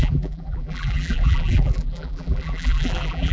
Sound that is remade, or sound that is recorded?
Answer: remade